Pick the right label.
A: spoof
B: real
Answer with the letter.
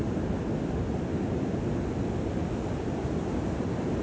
B